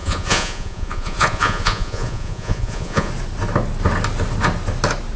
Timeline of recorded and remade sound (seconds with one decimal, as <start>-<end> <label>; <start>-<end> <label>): 0.0-3.1 remade; 3.1-5.2 recorded